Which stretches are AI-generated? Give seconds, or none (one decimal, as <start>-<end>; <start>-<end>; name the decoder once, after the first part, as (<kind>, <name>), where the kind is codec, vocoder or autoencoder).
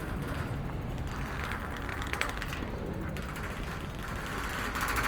none